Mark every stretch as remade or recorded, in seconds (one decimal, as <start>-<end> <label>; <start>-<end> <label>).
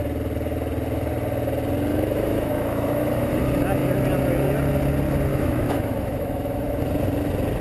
0.0-1.9 recorded; 1.9-3.3 remade; 3.3-5.3 recorded; 5.3-6.8 remade; 6.8-7.6 recorded